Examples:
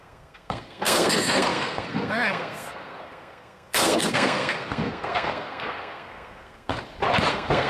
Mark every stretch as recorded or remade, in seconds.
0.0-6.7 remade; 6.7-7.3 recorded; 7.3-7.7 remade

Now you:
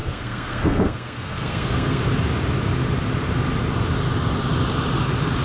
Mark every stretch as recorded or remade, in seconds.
0.0-2.0 remade; 2.0-5.4 recorded

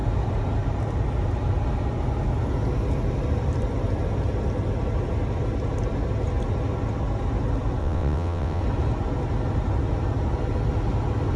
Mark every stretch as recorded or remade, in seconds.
0.0-7.8 recorded; 7.8-8.6 remade; 8.6-11.4 recorded

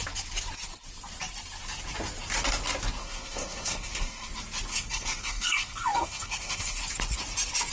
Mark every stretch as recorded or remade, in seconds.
0.0-3.0 recorded; 3.0-4.3 remade; 4.3-4.7 recorded; 4.7-6.8 remade; 6.8-7.7 recorded

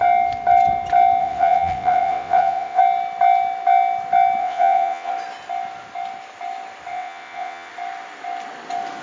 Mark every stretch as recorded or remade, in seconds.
0.0-1.2 recorded; 1.2-2.8 remade; 2.8-4.4 recorded; 4.4-5.1 remade; 5.1-6.9 recorded; 6.9-7.7 remade; 7.7-9.0 recorded

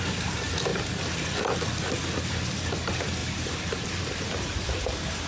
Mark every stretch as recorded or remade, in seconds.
0.0-3.2 recorded; 3.2-5.3 remade

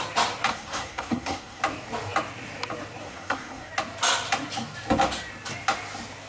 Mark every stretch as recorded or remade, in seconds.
0.0-0.5 recorded; 0.5-1.6 remade; 1.6-3.0 recorded; 3.0-3.7 remade; 3.7-6.3 recorded